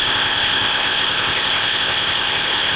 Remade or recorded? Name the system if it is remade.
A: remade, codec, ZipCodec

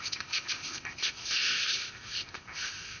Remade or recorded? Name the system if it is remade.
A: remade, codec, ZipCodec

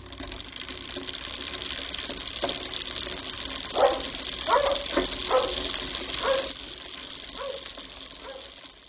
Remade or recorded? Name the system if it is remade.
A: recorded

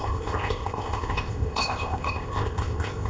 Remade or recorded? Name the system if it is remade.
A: remade, codec, ZipCodec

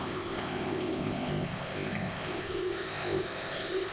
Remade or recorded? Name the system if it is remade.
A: remade, codec, ZipCodec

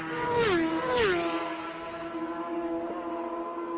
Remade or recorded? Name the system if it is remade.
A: recorded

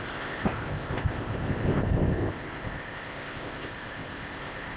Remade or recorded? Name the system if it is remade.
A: remade, codec, ZipCodec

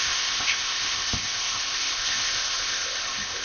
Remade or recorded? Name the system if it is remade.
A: remade, codec, ZipCodec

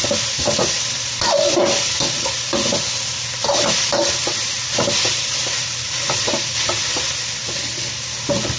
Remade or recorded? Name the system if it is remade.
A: recorded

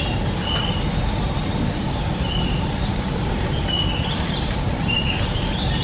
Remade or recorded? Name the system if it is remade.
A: recorded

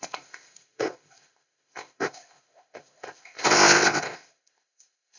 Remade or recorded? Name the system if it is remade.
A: remade, codec, ZipCodec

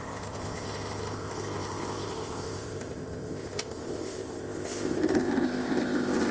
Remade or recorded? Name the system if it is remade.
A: remade, codec, ZipCodec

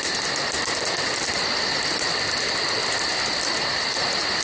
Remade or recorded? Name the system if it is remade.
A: recorded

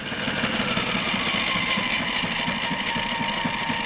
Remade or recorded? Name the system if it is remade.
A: recorded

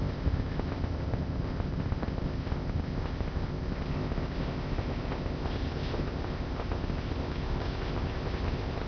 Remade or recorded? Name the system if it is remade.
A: remade, codec, ZipCodec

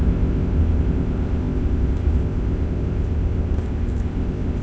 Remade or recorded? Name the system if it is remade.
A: remade, codec, ZipCodec